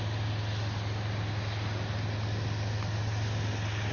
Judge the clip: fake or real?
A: real